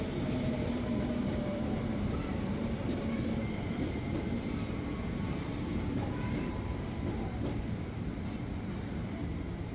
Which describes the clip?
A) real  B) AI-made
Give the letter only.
B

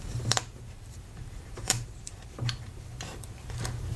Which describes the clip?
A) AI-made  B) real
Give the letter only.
A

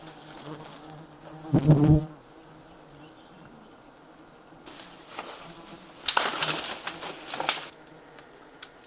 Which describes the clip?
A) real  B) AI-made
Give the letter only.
A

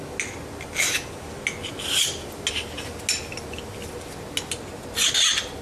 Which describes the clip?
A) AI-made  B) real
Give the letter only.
B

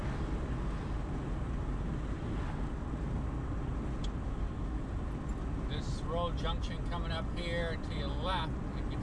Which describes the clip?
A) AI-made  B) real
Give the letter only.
B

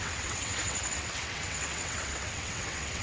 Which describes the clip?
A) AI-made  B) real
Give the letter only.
A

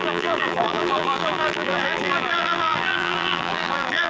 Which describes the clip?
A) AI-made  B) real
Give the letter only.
A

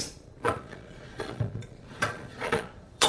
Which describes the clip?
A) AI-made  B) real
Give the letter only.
A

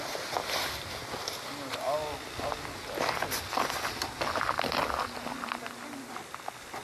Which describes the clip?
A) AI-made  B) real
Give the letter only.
B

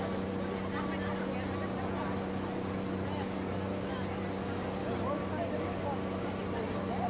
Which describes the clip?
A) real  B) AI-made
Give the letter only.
A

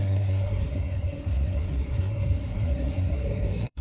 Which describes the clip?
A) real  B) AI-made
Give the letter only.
B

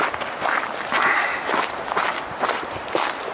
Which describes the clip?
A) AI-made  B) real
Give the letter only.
B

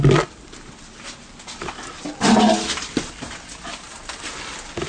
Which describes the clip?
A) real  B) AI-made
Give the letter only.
A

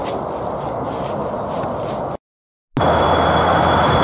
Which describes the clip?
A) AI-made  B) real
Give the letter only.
B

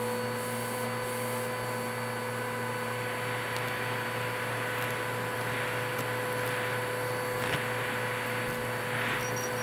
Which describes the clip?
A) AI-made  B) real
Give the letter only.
B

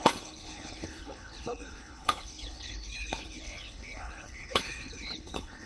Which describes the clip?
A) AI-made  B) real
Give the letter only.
A